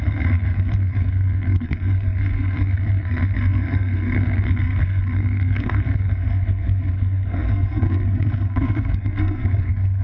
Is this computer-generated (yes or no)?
yes